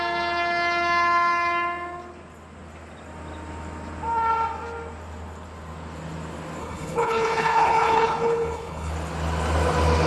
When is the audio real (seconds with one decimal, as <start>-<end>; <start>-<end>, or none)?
0.0-6.6; 8.9-10.1